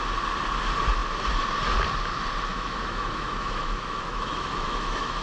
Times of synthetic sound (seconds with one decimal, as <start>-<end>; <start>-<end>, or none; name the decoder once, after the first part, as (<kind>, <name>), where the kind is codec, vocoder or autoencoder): 2.5-5.2 (autoencoder, DAC-VAE)